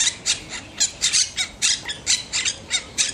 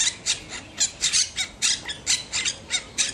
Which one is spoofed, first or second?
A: first